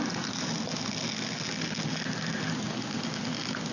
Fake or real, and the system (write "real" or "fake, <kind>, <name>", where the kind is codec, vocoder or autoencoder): real